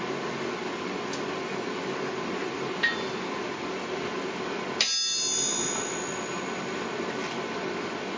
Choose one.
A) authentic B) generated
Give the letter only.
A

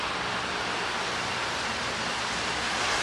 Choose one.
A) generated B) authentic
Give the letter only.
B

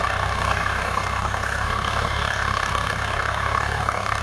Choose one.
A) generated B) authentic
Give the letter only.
A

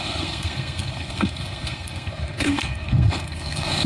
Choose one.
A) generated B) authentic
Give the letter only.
A